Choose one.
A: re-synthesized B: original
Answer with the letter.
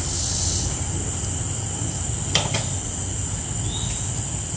B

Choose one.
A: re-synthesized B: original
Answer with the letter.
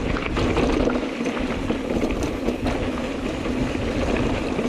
B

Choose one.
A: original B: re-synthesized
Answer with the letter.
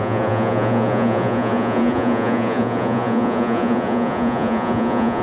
B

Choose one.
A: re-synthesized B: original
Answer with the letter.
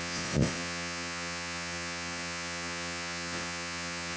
A